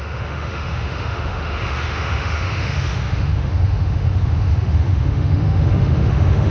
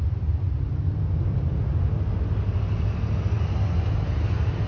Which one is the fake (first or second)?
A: first